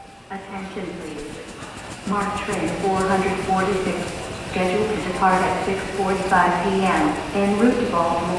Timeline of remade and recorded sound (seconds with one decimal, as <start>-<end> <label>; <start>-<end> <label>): 0.0-1.1 recorded; 1.1-4.3 remade; 4.3-5.0 recorded; 5.0-5.9 remade; 5.9-8.4 recorded